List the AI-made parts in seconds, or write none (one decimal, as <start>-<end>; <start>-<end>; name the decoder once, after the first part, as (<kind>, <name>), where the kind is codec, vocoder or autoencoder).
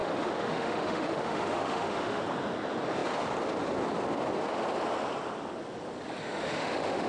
0.0-2.2 (autoencoder, DAC-VAE); 6.2-7.1